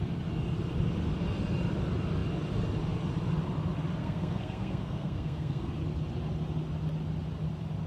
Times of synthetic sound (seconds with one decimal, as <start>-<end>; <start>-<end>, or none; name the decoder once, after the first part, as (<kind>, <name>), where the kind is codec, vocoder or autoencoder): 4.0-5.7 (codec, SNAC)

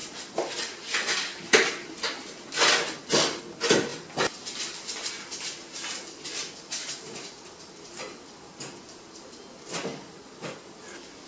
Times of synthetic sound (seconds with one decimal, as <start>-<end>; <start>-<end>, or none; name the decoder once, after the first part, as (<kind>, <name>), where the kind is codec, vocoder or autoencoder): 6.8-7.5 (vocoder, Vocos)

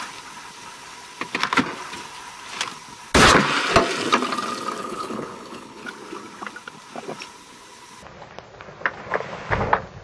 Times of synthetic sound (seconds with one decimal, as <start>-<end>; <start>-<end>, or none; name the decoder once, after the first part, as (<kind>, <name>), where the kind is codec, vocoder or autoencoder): 4.8-5.9 (codec, HILCodec)